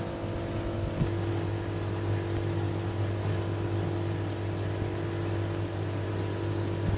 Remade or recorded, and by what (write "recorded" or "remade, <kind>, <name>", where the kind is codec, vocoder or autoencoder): recorded